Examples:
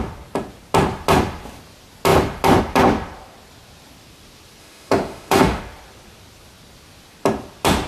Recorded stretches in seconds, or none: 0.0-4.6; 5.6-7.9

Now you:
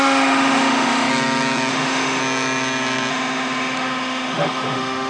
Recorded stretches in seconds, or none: 1.1-1.7; 2.2-3.1

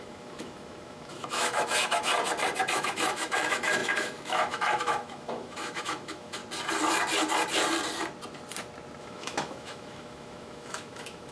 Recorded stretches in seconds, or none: 2.1-2.7; 6.4-9.0

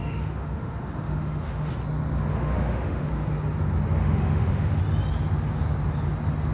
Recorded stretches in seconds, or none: 1.7-2.3; 3.1-4.0; 4.8-6.5

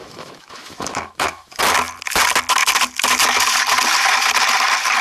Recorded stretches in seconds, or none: 1.6-5.0

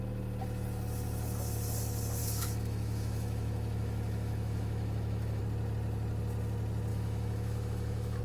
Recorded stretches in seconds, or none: 0.0-2.2; 5.4-6.9